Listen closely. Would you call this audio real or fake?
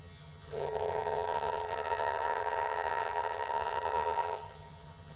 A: fake